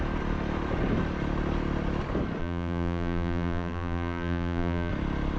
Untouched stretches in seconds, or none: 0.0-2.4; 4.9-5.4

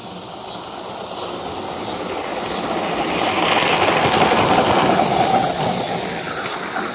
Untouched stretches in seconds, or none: 0.0-6.9

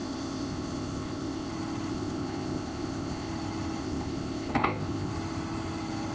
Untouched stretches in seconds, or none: 1.5-1.9; 3.3-3.8; 5.1-6.1

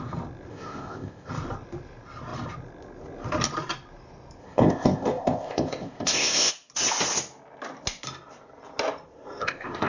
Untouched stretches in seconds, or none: 0.0-0.5; 1.3-4.4; 6.5-9.4

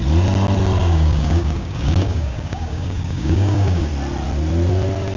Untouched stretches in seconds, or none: 0.0-0.8; 3.9-5.2

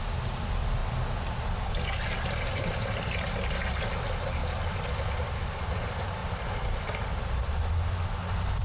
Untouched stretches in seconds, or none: 0.0-6.2; 7.0-8.6

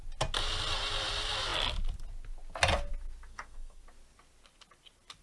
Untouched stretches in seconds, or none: 0.0-3.3; 3.8-5.2

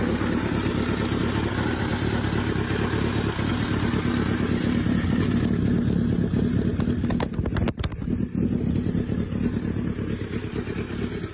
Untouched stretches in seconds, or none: 0.0-11.3